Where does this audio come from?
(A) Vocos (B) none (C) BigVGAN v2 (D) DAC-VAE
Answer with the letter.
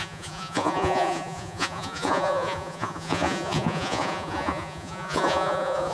A